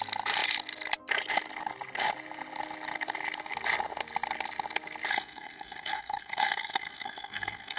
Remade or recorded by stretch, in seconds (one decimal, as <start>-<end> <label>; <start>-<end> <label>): 0.0-5.1 recorded; 5.1-7.8 remade